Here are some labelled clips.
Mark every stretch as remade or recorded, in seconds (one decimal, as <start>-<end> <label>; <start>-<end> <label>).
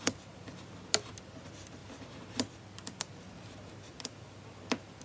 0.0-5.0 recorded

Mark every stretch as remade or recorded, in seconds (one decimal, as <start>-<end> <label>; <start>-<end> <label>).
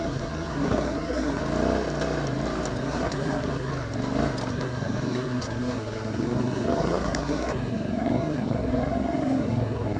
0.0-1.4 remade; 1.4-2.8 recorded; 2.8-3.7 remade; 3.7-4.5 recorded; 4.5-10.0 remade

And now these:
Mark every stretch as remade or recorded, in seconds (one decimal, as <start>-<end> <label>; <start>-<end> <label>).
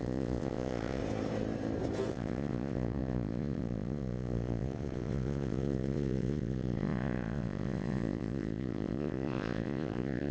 0.0-1.0 remade; 1.0-2.1 recorded; 2.1-10.3 remade